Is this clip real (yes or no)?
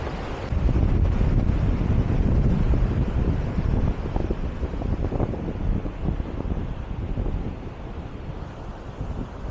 yes